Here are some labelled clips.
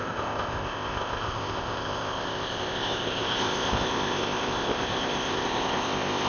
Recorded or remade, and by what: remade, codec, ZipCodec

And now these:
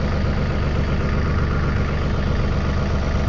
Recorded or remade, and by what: recorded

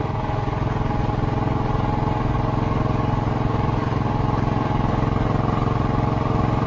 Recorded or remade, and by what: recorded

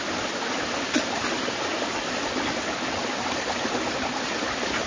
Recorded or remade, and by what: recorded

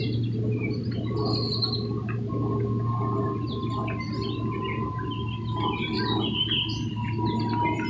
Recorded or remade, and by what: recorded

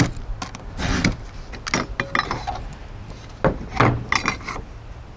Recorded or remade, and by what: recorded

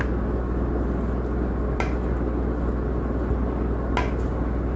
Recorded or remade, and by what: recorded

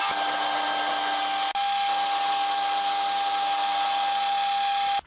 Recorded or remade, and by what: recorded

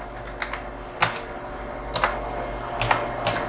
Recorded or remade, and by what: recorded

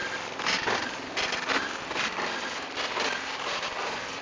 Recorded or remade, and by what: recorded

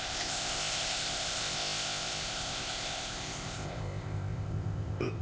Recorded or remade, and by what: remade, codec, ZipCodec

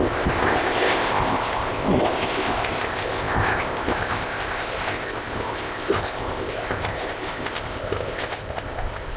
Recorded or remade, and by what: remade, codec, ZipCodec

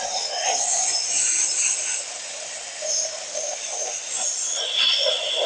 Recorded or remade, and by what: recorded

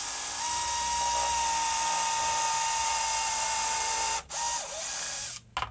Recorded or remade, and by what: recorded